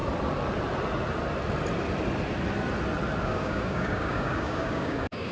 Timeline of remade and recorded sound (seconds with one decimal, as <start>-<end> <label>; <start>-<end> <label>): 0.0-3.2 recorded; 3.2-5.3 remade